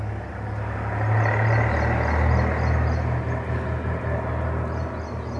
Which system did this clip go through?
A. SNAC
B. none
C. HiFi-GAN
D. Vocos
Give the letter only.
B